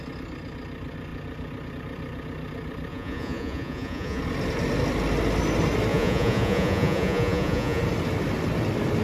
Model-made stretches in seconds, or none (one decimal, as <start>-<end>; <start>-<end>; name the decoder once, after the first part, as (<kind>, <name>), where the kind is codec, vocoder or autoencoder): 2.9-4.2 (vocoder, Vocos); 5.9-7.8